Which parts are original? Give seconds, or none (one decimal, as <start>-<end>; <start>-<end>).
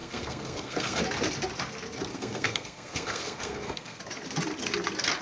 1.0-2.1; 4.0-5.2